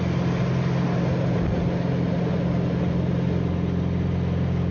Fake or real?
real